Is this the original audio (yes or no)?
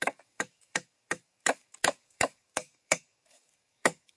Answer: no